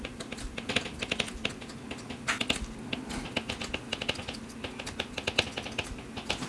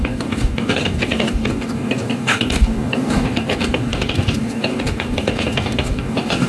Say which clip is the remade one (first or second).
second